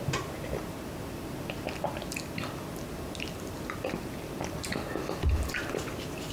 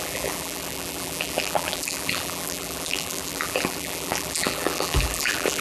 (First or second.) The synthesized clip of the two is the second